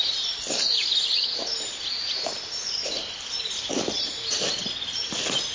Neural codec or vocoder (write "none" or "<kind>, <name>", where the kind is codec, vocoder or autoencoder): none